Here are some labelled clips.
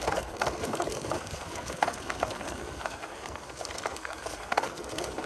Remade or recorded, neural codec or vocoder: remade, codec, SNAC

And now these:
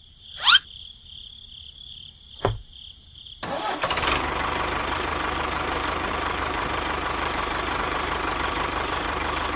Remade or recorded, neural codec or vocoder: remade, vocoder, BigVGAN v2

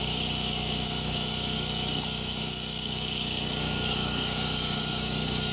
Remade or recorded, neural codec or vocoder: remade, codec, DAC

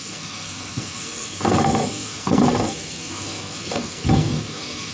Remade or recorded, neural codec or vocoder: remade, codec, SNAC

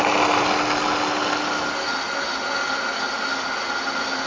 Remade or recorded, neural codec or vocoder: recorded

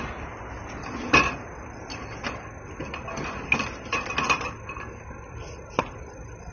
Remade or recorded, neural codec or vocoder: recorded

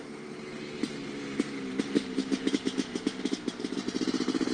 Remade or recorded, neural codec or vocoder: recorded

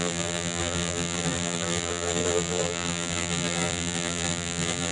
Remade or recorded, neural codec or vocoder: remade, vocoder, BigVGAN v2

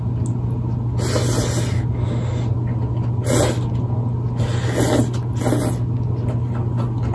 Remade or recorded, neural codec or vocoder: recorded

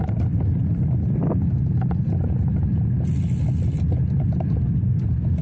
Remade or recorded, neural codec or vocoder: recorded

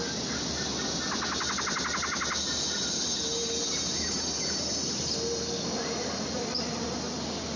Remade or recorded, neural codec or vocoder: recorded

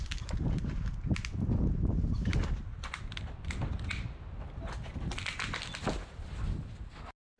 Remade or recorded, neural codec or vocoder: recorded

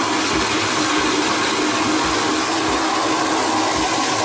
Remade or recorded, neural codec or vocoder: recorded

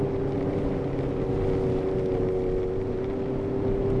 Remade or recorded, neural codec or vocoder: recorded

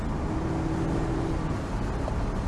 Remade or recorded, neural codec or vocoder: recorded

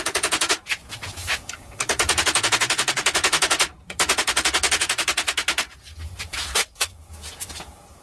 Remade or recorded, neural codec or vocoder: remade, vocoder, Vocos